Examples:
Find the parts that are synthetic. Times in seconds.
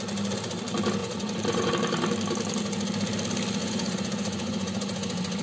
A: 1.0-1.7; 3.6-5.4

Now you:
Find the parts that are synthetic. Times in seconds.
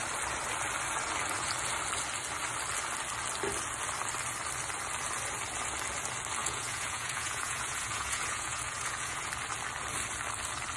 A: 6.4-9.3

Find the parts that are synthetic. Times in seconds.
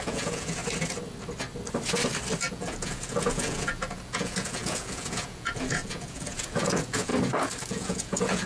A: 0.0-0.6; 2.5-7.1; 7.7-8.5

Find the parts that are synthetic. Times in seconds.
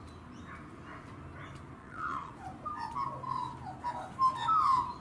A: 1.8-2.3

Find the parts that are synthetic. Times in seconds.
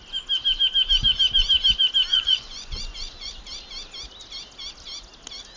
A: 2.1-3.3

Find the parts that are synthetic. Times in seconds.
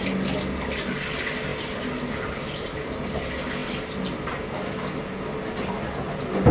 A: none